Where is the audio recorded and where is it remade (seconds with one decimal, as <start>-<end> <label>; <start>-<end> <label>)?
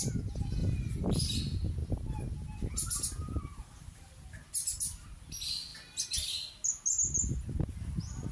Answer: 0.0-0.6 recorded; 0.6-1.4 remade; 1.4-3.5 recorded; 3.5-4.4 remade; 4.4-8.3 recorded